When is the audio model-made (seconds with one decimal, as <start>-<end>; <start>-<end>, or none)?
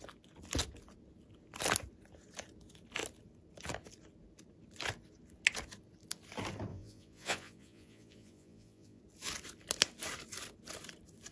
6.7-9.0